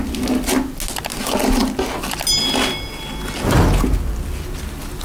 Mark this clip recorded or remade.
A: recorded